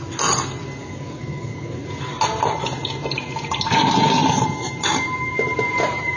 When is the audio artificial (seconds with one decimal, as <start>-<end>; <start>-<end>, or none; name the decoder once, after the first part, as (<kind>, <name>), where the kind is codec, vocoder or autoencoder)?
0.8-1.8 (codec, DAC)